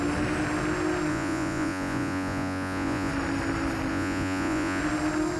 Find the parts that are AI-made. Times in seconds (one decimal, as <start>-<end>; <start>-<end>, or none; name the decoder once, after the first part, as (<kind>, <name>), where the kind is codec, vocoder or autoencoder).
1.1-3.1 (vocoder, Vocos); 3.9-4.8